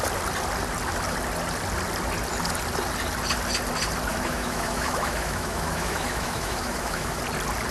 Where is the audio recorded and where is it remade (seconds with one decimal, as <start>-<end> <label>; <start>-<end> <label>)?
0.0-4.1 recorded; 4.1-7.2 remade; 7.2-7.7 recorded